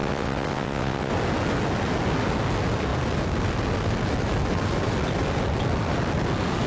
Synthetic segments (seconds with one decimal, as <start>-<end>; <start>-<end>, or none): 0.0-1.1